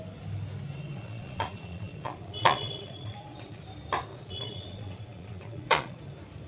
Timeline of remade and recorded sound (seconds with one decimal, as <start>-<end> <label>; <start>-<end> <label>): 0.0-0.9 recorded; 0.9-3.6 remade; 3.6-4.1 recorded; 4.1-6.0 remade; 6.0-6.5 recorded